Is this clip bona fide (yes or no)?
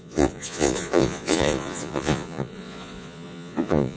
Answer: no